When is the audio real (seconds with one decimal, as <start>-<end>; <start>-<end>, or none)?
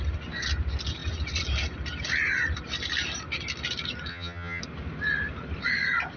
0.0-4.1; 4.6-6.2